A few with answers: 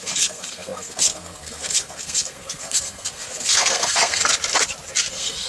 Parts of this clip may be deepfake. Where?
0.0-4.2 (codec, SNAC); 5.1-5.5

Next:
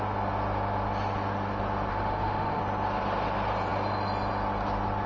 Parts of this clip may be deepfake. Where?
1.9-2.6 (autoencoder, DAC-VAE)

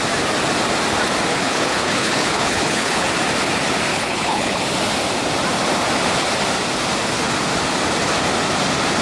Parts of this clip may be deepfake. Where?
1.3-3.1 (codec, HILCodec); 3.9-4.6

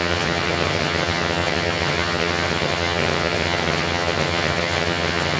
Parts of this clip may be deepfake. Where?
0.0-5.4 (vocoder, HiFi-GAN)